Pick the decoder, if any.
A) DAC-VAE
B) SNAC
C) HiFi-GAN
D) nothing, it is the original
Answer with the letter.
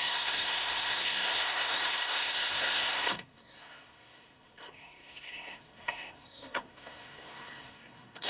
B